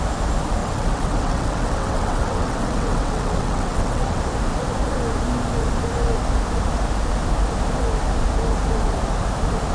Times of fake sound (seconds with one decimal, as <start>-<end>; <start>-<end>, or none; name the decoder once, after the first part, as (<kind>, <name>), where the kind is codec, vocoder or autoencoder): 0.6-4.2 (vocoder, WaveNeXt)